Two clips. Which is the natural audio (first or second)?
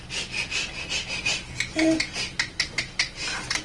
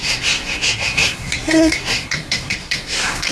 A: first